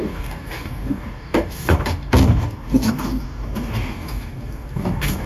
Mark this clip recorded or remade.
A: remade